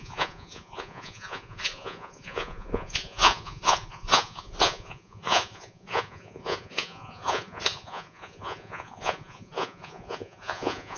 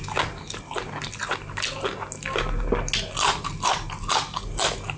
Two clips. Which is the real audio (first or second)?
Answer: second